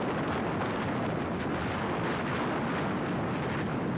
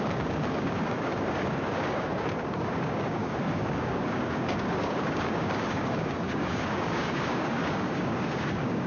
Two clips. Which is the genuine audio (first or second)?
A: first